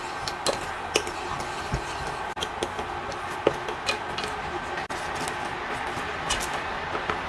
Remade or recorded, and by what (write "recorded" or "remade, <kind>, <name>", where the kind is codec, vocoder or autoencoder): recorded